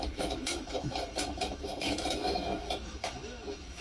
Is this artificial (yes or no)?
yes